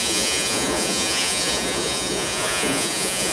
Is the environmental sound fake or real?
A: fake